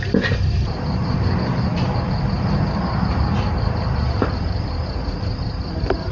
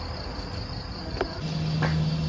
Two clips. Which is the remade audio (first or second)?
first